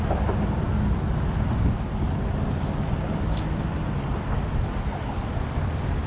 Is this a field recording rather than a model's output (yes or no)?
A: yes